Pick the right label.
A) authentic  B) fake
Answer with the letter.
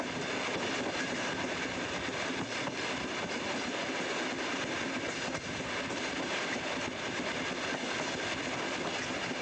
A